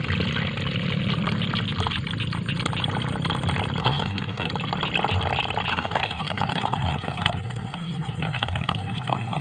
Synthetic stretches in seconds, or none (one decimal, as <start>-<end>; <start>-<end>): 3.8-4.5; 5.7-9.4